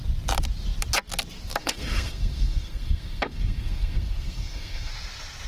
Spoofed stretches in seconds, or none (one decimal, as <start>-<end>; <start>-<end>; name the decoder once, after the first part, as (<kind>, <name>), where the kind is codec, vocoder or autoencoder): 1.6-4.9 (codec, SNAC)